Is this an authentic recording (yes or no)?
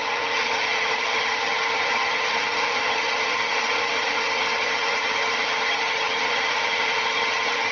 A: no